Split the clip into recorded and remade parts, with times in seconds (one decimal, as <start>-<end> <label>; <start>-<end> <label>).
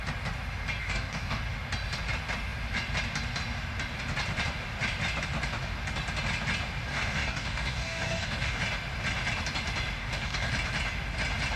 0.0-0.8 recorded; 0.8-1.4 remade; 1.4-6.9 recorded; 6.9-8.6 remade; 8.6-10.0 recorded; 10.0-10.5 remade; 10.5-11.6 recorded